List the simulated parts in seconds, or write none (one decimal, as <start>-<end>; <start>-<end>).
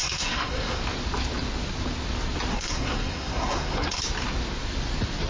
0.0-0.8; 2.5-4.0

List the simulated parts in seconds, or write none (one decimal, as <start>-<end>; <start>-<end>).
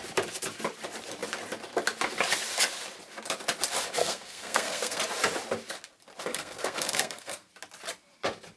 4.0-5.0; 6.3-7.5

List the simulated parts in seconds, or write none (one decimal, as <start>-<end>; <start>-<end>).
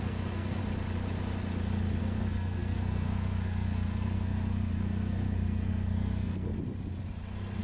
0.0-0.6; 2.0-6.5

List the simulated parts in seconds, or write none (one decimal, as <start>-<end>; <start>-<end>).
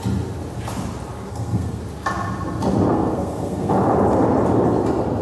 1.3-1.8; 2.9-3.7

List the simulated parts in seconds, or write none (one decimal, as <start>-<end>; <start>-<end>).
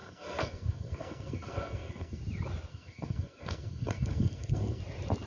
0.0-2.2; 2.7-4.8